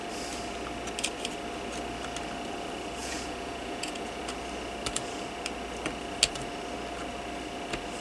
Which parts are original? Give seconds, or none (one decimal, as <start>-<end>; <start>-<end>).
0.0-3.0; 4.2-8.0